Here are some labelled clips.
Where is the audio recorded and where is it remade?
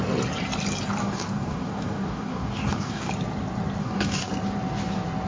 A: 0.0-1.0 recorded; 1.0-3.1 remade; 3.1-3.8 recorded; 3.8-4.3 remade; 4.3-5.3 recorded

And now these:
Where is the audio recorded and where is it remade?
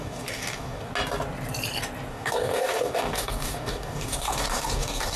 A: 0.0-0.9 remade; 0.9-2.1 recorded; 2.1-5.2 remade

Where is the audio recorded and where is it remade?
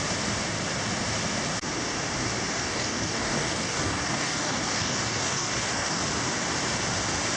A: 0.0-2.5 recorded; 2.5-6.0 remade; 6.0-7.4 recorded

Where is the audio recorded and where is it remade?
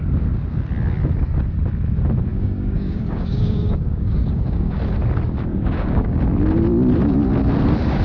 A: 0.0-2.3 recorded; 2.3-4.8 remade; 4.8-5.5 recorded; 5.5-6.2 remade; 6.2-8.0 recorded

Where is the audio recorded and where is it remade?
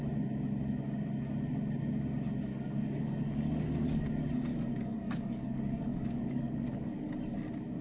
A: 0.0-2.5 recorded; 2.5-4.1 remade; 4.1-4.5 recorded; 4.5-7.1 remade; 7.1-7.8 recorded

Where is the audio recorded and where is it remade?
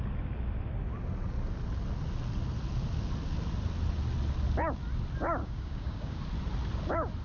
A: 0.0-5.4 recorded; 5.4-6.2 remade; 6.2-7.2 recorded